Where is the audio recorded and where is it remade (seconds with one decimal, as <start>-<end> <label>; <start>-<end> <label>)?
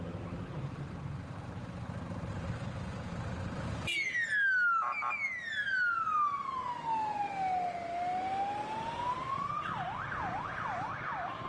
0.0-11.5 recorded